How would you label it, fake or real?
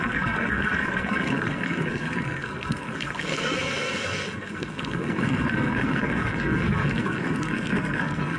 fake